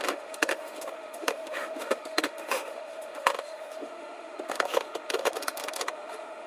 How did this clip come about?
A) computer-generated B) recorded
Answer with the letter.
A